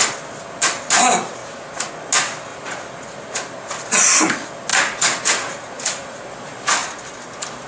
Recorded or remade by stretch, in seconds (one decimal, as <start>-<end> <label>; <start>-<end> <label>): 0.0-1.4 recorded; 1.4-1.9 remade; 1.9-2.5 recorded; 2.5-3.8 remade; 3.8-4.7 recorded; 4.7-6.3 remade; 6.3-7.7 recorded